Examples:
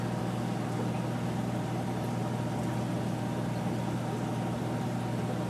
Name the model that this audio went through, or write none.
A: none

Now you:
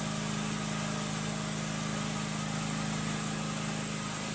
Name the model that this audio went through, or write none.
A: none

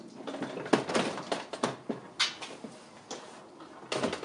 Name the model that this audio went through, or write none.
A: none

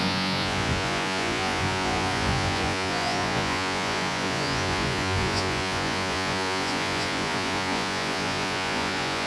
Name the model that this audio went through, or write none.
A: vocoder, Vocos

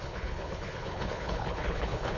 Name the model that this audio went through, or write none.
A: codec, HILCodec